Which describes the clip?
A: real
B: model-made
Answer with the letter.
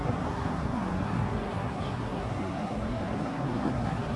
B